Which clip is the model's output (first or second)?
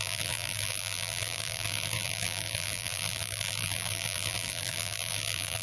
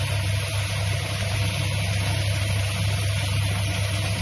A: first